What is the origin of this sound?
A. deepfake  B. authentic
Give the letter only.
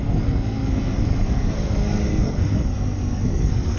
A